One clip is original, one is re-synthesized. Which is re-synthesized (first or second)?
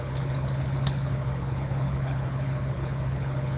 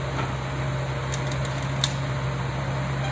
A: first